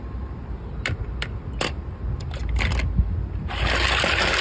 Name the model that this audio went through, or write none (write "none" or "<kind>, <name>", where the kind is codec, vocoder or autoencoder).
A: none